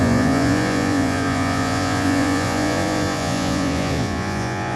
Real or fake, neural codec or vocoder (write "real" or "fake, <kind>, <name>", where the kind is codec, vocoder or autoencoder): fake, vocoder, Vocos